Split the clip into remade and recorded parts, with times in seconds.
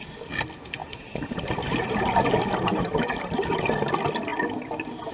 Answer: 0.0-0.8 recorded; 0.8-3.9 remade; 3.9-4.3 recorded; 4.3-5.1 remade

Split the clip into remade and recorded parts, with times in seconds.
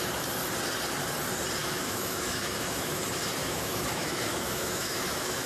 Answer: 0.0-1.6 recorded; 1.6-3.0 remade; 3.0-3.4 recorded; 3.4-5.5 remade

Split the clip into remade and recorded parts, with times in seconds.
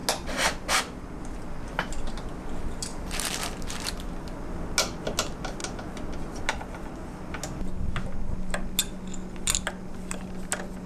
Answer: 0.0-2.9 recorded; 2.9-3.6 remade; 3.6-10.9 recorded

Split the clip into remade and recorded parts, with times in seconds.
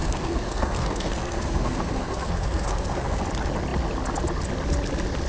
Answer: 0.0-3.2 remade; 3.2-5.3 recorded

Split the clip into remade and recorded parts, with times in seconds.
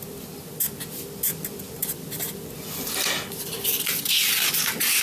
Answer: 0.0-5.0 recorded